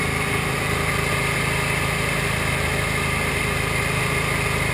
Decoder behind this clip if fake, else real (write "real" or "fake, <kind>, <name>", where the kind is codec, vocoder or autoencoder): real